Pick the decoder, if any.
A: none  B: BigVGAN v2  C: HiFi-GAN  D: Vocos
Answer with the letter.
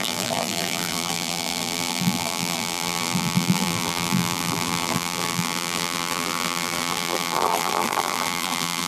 B